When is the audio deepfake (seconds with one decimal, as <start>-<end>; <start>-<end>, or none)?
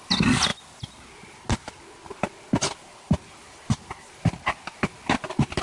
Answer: none